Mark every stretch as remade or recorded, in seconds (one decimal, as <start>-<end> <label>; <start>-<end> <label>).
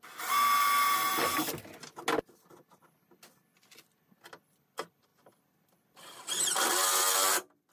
0.0-7.7 recorded